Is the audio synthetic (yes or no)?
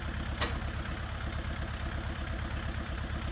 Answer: no